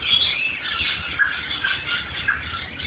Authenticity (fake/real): real